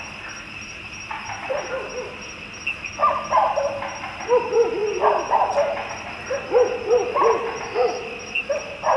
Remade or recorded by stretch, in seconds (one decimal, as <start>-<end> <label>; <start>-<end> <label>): 0.0-9.0 recorded